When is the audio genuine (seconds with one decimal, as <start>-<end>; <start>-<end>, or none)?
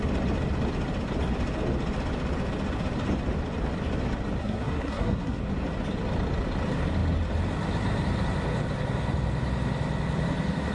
0.0-4.4; 5.4-10.7